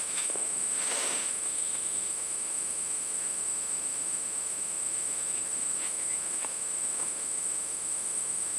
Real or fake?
fake